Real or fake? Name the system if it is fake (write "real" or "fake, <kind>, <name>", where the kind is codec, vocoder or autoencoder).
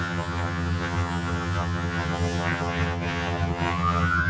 fake, vocoder, HiFi-GAN